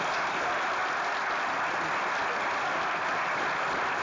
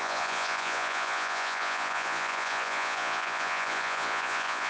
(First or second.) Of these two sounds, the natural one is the first